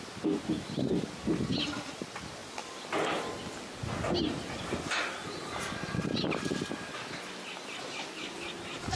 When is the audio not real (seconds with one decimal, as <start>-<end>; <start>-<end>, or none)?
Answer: none